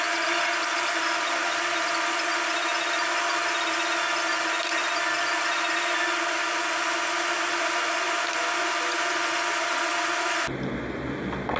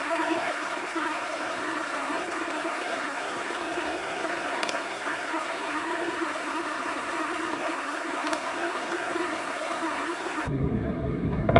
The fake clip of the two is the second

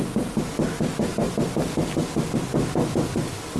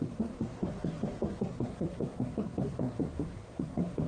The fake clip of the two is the second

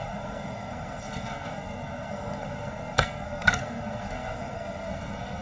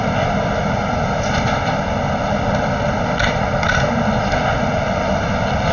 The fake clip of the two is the first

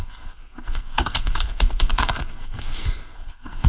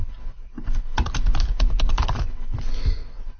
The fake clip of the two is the first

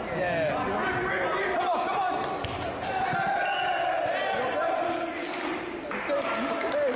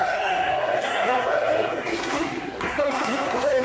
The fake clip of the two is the second